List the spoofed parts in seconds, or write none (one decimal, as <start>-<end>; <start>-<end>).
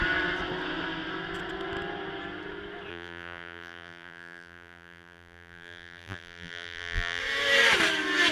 2.9-7.2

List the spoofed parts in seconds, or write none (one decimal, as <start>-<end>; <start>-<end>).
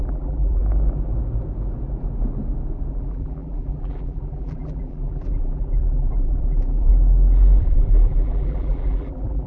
0.0-0.6; 2.9-6.9; 7.6-9.5